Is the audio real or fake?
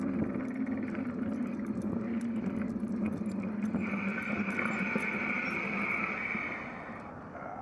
real